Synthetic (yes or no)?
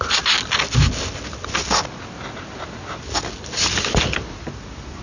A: no